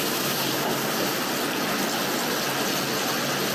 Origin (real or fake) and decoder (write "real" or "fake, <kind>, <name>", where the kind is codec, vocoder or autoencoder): real